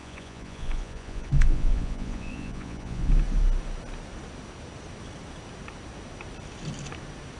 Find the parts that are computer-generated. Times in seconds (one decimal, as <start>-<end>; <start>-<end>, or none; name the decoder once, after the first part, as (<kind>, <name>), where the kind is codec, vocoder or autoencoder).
0.0-3.1 (vocoder, Vocos)